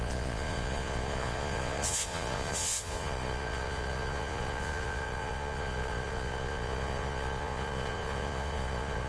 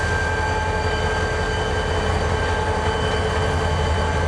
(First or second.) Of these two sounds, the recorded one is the second